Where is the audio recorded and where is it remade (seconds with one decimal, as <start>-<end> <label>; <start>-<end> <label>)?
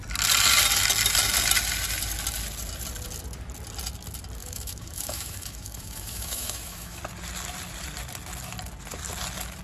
0.0-4.4 recorded; 4.4-7.0 remade; 7.0-9.6 recorded